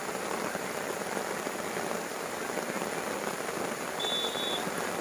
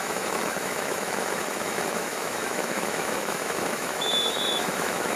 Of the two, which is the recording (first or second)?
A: first